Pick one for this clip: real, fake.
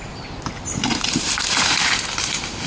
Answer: real